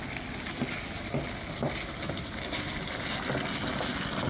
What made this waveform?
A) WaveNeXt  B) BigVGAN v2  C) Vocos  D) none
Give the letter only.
D